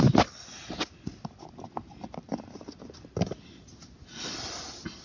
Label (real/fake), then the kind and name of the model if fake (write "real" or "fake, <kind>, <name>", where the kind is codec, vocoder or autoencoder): real